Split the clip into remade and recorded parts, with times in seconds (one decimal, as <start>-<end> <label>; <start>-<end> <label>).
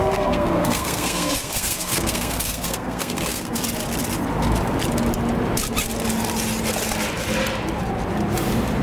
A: 0.0-3.6 remade; 3.6-8.8 recorded